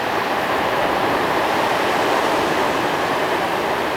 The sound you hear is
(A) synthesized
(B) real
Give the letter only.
A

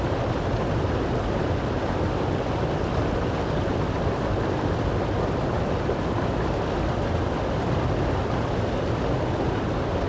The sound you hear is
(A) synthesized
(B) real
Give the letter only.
B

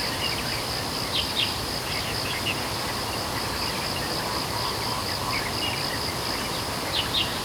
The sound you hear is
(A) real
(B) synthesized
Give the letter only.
A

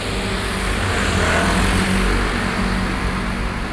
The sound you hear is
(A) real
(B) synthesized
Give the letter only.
A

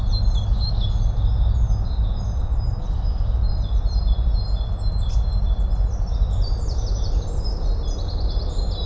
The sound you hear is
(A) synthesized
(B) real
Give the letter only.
B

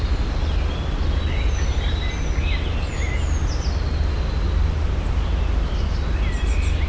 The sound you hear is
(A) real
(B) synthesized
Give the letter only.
A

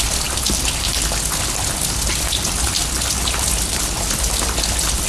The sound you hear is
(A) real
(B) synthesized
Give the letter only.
A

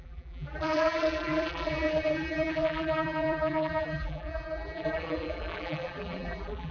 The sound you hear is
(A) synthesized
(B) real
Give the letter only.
A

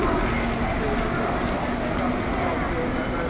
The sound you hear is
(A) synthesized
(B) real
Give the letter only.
B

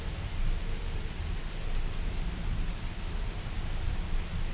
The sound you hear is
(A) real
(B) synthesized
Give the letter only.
A